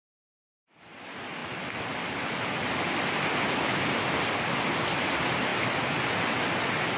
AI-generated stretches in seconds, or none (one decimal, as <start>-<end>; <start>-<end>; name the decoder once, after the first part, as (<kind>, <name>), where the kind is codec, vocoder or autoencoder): none